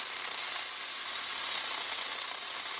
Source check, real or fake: real